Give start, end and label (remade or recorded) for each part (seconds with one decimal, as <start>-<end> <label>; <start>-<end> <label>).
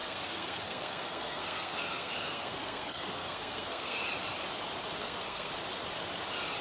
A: 0.0-4.0 remade; 4.0-5.0 recorded; 5.0-5.5 remade; 5.5-6.6 recorded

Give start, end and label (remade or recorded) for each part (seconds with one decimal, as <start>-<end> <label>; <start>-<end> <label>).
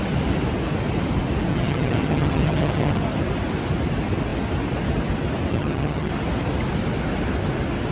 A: 0.0-1.5 recorded; 1.5-3.0 remade; 3.0-5.5 recorded; 5.5-6.1 remade; 6.1-7.9 recorded